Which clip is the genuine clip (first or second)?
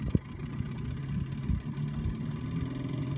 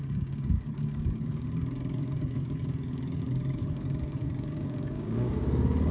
first